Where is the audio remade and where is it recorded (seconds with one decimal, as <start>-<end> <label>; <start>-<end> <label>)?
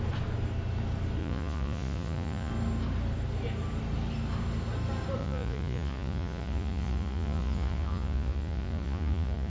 0.0-1.2 recorded; 1.2-2.5 remade; 2.5-5.2 recorded; 5.2-9.5 remade